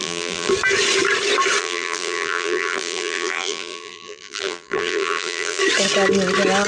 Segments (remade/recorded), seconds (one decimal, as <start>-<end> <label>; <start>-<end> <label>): 0.0-0.5 remade; 0.5-1.6 recorded; 1.6-5.6 remade; 5.6-6.7 recorded